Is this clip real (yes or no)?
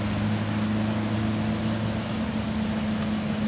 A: yes